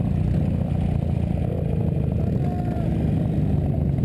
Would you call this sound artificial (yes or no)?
no